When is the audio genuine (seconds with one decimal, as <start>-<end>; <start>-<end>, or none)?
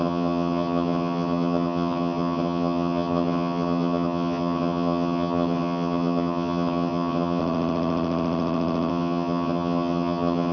7.4-8.9